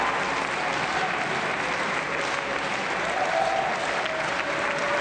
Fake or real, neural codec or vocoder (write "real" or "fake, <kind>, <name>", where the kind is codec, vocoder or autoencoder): real